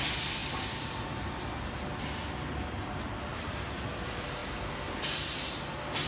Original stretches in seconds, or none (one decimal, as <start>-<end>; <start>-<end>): 0.0-6.1